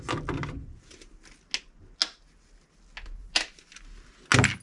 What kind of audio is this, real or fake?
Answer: real